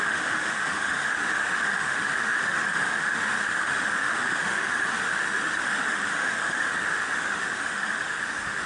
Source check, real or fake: fake